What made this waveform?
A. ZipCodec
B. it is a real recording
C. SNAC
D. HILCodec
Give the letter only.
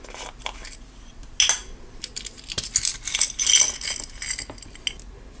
B